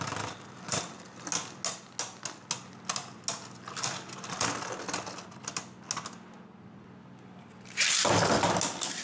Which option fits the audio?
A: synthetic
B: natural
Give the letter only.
B